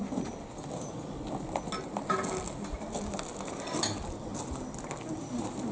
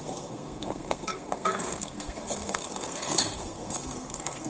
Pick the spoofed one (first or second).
second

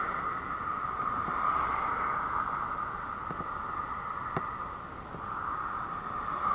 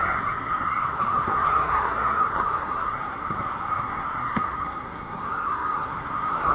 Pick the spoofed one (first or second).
second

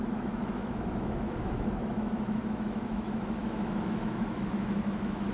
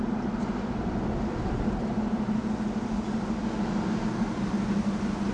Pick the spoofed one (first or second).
first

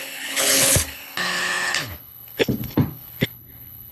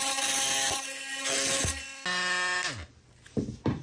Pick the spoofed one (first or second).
first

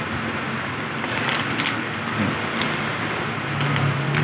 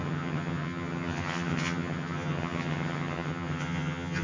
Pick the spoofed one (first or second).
second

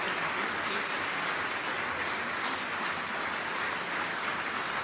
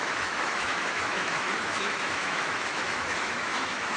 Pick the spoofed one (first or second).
second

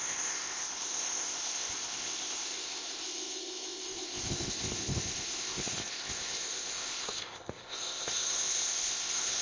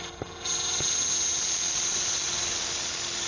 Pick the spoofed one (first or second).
first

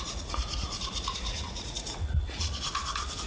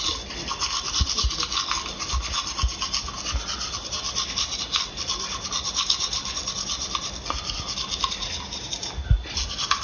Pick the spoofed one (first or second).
first